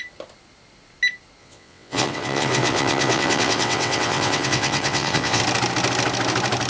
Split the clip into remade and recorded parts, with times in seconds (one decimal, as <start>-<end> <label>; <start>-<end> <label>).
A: 0.0-1.4 recorded; 1.4-5.4 remade; 5.4-6.7 recorded